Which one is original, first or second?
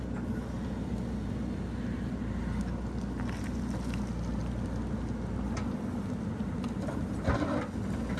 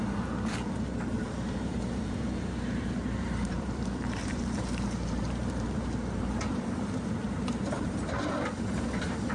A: first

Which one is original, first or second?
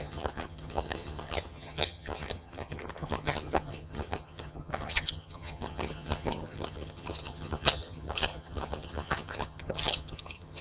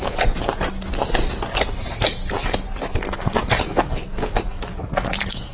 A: second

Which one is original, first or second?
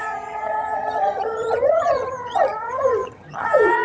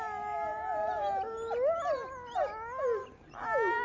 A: second